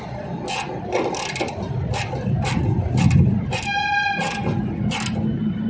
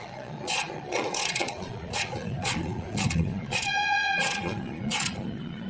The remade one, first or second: second